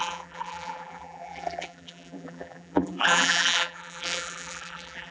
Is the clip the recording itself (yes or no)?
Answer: no